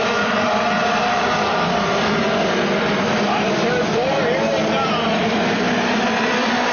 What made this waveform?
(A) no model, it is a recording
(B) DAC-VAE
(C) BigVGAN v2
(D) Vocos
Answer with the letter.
C